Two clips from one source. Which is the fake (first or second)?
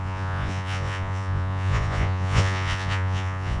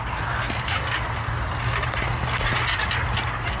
first